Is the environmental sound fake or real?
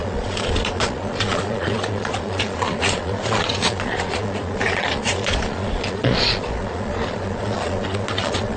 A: fake